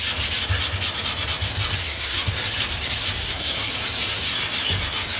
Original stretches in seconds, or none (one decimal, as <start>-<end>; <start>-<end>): 0.0-1.8; 2.3-3.2; 3.7-5.2